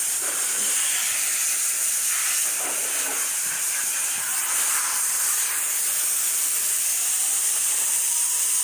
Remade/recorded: remade